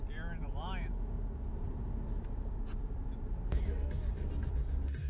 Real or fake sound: real